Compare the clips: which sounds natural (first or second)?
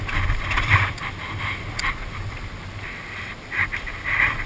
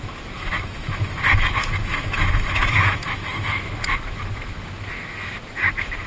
first